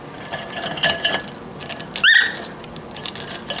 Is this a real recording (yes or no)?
yes